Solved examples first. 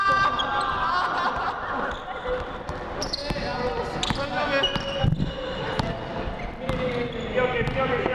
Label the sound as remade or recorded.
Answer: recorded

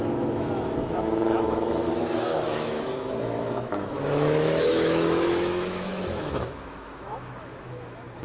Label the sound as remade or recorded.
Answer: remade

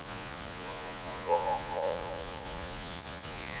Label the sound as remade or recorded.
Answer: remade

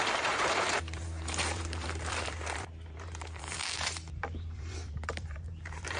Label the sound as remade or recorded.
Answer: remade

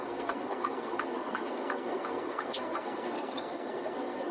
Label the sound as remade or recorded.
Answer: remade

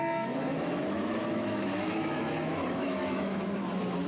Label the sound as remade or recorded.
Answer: remade